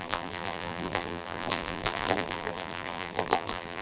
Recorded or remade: remade